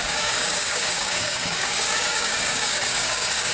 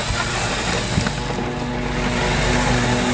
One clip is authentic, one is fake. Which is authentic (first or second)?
second